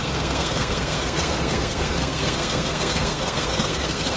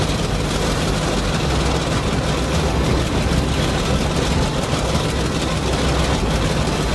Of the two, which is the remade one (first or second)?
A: first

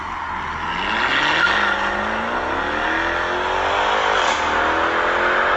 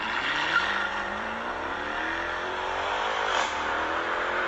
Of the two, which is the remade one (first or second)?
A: second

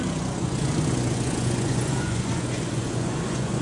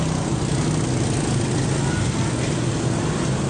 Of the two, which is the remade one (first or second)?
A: first